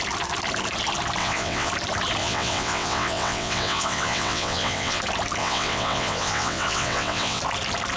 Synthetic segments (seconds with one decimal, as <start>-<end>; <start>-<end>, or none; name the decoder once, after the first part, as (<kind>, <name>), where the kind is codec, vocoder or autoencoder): 1.2-1.7 (vocoder, WaveNeXt); 2.2-5.0; 5.4-7.4